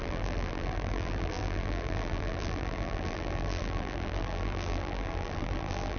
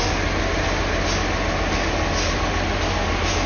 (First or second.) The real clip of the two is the second